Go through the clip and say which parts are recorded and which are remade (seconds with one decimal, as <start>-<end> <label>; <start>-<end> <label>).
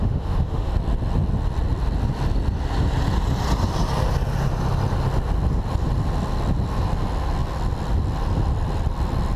0.0-0.7 remade; 0.7-9.4 recorded